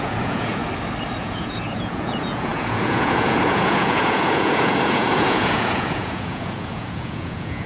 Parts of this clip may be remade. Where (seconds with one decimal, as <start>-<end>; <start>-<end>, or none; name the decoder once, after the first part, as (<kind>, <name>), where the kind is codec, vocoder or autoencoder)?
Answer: 0.0-0.6 (vocoder, Vocos); 1.2-7.7